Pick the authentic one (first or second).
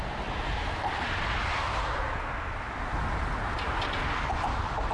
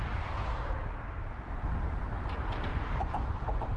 first